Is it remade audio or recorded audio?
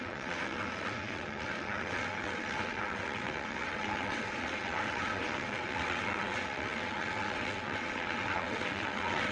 remade